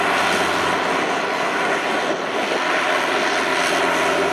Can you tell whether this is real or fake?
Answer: real